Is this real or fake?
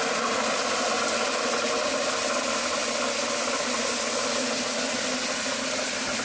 real